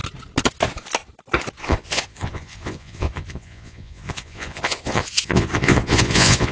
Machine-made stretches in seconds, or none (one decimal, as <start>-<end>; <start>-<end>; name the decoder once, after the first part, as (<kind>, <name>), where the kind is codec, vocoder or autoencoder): 1.6-6.5 (vocoder, Vocos)